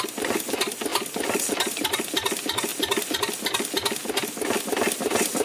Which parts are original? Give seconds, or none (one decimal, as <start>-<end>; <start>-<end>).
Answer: 0.0-5.4